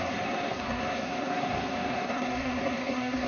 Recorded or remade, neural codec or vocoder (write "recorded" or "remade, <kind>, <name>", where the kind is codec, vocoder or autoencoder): remade, codec, SNAC